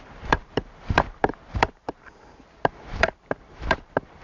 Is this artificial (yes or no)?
yes